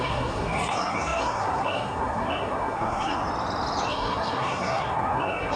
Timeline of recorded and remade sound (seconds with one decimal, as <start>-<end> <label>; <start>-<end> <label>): 0.0-3.2 remade; 3.2-3.9 recorded; 3.9-5.6 remade